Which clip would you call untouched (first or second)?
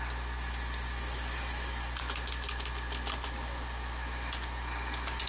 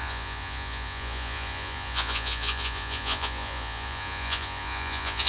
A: first